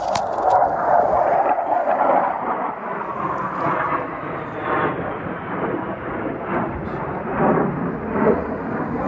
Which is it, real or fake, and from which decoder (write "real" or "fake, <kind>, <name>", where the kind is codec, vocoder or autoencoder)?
real